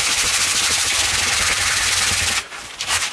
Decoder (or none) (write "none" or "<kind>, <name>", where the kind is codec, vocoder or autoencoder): vocoder, BigVGAN v2